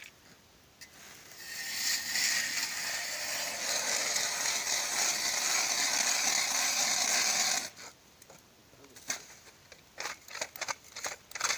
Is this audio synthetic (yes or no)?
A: no